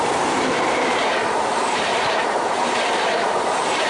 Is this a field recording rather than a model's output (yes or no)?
no